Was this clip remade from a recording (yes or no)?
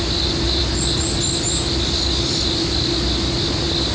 no